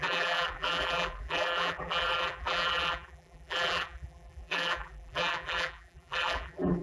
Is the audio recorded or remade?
remade